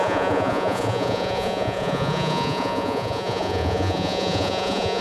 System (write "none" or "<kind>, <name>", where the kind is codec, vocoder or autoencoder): vocoder, Vocos